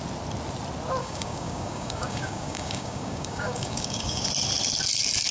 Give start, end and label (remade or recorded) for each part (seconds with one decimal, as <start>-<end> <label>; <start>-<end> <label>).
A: 0.0-1.0 recorded; 1.0-4.2 remade; 4.2-5.3 recorded

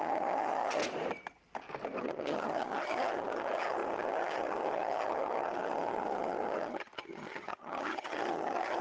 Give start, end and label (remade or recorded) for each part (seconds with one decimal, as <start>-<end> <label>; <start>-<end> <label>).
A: 0.0-0.8 remade; 0.8-2.0 recorded; 2.0-8.8 remade

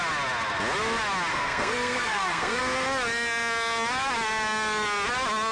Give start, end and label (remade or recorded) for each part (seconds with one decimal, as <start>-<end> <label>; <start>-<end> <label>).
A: 0.0-1.3 recorded; 1.3-2.6 remade; 2.6-5.5 recorded

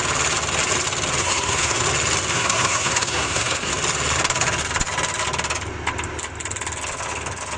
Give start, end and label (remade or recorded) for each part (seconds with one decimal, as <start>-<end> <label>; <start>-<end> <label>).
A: 0.0-1.2 recorded; 1.2-1.8 remade; 1.8-2.3 recorded; 2.3-3.7 remade; 3.7-7.6 recorded

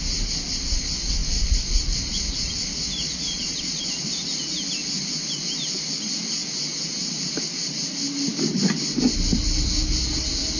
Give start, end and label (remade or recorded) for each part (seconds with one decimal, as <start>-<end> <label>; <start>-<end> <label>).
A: 0.0-3.0 recorded; 3.0-3.9 remade; 3.9-10.6 recorded

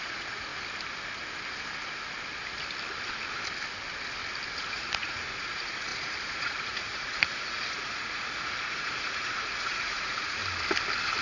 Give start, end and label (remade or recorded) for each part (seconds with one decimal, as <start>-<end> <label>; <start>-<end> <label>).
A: 0.0-0.5 remade; 0.5-4.7 recorded; 4.7-10.4 remade; 10.4-11.2 recorded

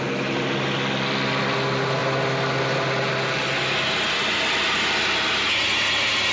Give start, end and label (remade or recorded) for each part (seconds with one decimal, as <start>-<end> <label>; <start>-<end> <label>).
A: 0.0-6.3 recorded

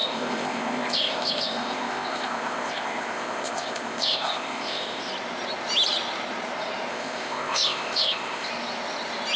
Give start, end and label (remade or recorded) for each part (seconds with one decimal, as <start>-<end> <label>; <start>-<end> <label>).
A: 0.0-5.1 remade; 5.1-6.9 recorded; 6.9-8.5 remade; 8.5-9.4 recorded